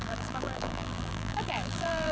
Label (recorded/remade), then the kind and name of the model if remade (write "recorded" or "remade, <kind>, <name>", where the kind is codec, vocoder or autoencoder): remade, vocoder, BigVGAN v2